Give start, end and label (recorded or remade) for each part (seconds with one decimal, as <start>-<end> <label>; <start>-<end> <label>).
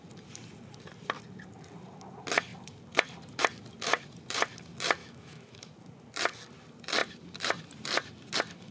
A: 0.0-5.0 recorded; 5.0-5.7 remade; 5.7-8.7 recorded